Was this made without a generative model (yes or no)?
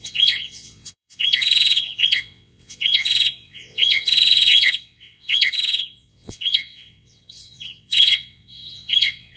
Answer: no